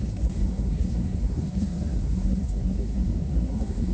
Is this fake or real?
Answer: fake